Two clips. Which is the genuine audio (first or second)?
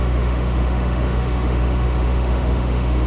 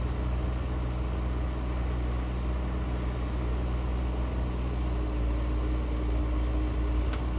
second